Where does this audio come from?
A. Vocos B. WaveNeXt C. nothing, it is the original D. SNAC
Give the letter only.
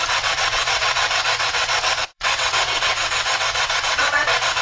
B